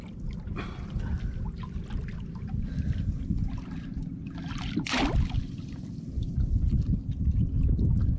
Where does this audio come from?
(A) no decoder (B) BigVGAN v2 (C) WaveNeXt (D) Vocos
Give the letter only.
A